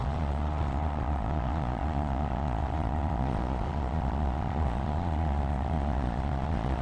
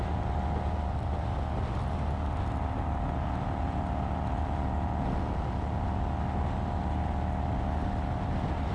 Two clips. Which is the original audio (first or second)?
second